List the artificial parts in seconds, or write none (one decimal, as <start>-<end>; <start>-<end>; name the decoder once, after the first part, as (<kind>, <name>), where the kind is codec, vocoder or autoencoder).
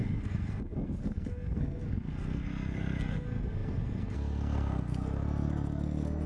0.0-6.3 (codec, SNAC)